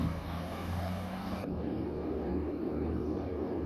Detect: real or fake fake